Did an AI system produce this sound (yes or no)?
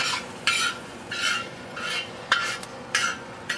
yes